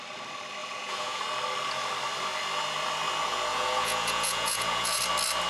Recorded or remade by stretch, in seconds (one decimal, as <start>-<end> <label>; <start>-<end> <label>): 0.0-0.6 recorded; 0.6-1.2 remade; 1.2-3.5 recorded; 3.5-5.0 remade; 5.0-5.5 recorded

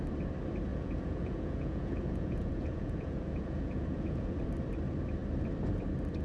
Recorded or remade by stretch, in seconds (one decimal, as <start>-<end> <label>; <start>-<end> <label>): 0.0-0.7 recorded; 0.7-4.4 remade; 4.4-6.2 recorded

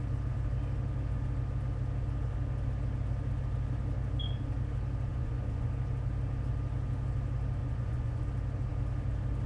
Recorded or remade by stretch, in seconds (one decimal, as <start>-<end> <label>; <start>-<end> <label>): 0.0-5.1 recorded; 5.1-5.7 remade; 5.7-7.6 recorded; 7.6-8.2 remade; 8.2-9.5 recorded

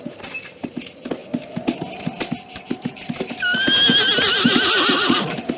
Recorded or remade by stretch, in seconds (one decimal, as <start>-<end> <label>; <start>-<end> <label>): 0.0-5.6 recorded

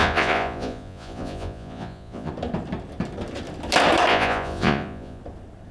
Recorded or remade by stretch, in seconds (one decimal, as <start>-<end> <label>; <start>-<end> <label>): 0.0-2.3 remade; 2.3-4.1 recorded; 4.1-5.2 remade; 5.2-5.7 recorded

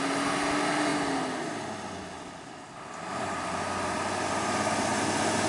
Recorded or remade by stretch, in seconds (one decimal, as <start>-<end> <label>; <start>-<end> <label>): 0.0-5.5 recorded

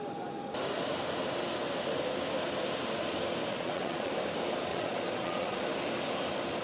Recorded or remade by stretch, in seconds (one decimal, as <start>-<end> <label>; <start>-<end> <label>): 0.0-3.5 recorded; 3.5-4.1 remade; 4.1-4.7 recorded; 4.7-5.6 remade; 5.6-6.6 recorded

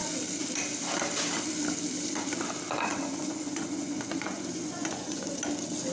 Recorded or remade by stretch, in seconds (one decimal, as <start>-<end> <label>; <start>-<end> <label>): 0.0-2.9 recorded; 2.9-5.4 remade; 5.4-5.9 recorded